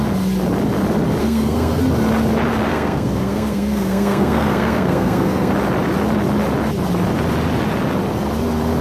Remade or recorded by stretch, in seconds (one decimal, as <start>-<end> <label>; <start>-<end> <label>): 0.0-1.2 recorded; 1.2-1.8 remade; 1.8-2.7 recorded; 2.7-5.5 remade; 5.5-8.8 recorded